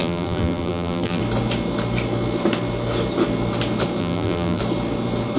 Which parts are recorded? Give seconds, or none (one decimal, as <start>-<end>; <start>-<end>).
1.2-4.0; 4.6-5.4